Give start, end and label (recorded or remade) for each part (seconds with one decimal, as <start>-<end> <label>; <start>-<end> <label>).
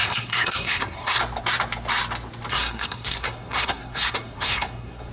0.0-1.2 remade; 1.2-2.5 recorded; 2.5-5.1 remade